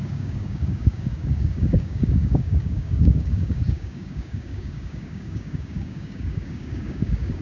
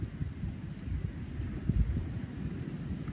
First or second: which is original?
second